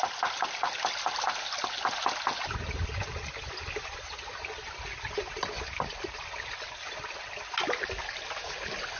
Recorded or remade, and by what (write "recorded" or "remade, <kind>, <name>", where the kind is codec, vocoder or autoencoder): recorded